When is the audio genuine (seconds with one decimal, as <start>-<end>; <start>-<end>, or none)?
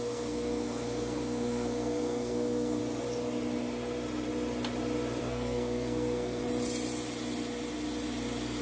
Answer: 2.8-5.2; 6.4-8.6